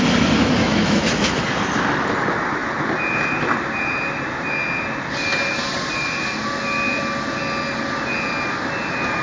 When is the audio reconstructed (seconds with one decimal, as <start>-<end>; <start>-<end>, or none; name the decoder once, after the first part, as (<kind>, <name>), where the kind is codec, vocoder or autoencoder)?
0.6-1.3 (autoencoder, DAC-VAE)